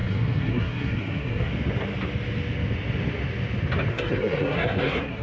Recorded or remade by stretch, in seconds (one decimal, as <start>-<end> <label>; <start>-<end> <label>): 0.0-1.5 remade; 1.5-3.9 recorded; 3.9-5.2 remade